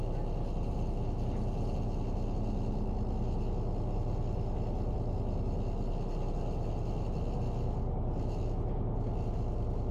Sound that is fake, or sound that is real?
real